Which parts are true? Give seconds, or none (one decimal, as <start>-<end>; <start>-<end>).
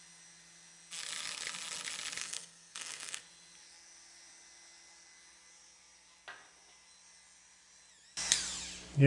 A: 0.0-2.2; 3.2-9.1